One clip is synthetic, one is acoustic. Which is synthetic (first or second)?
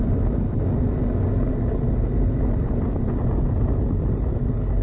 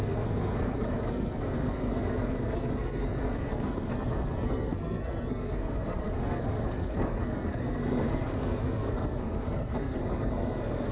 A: second